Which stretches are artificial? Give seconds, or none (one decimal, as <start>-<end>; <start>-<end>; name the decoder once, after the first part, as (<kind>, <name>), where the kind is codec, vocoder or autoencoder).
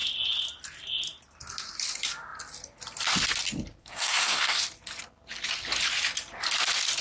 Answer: 3.8-4.6 (codec, SNAC)